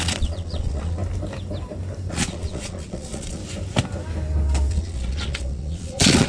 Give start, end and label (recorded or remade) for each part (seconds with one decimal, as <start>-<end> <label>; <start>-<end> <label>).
0.0-1.0 remade; 1.0-2.1 recorded; 2.1-3.4 remade; 3.4-4.7 recorded; 4.7-6.3 remade